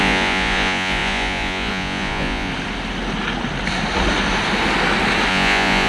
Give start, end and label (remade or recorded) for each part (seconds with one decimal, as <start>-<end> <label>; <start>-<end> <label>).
0.0-2.5 remade; 2.5-5.3 recorded; 5.3-5.9 remade